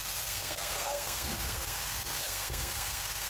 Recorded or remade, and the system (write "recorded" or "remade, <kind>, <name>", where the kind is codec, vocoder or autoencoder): remade, codec, SNAC